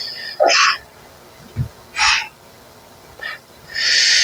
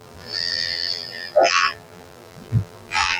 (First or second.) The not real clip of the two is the second